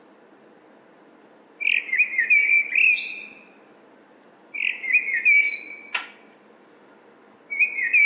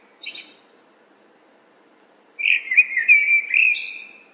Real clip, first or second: first